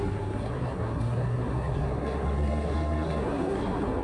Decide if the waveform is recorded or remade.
remade